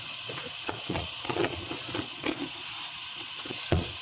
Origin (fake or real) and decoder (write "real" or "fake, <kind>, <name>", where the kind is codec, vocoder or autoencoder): fake, vocoder, Vocos